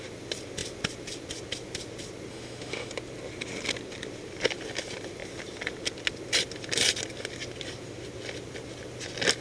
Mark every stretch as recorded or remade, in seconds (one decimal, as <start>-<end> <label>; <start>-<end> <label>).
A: 0.0-2.3 recorded; 2.3-2.9 remade; 2.9-9.4 recorded